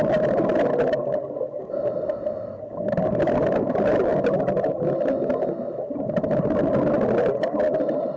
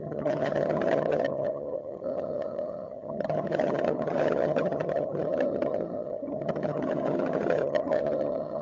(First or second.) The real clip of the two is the first